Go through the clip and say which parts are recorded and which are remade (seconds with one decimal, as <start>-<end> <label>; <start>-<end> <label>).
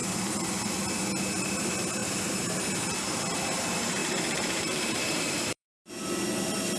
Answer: 0.0-4.0 recorded; 4.0-5.9 remade; 5.9-6.8 recorded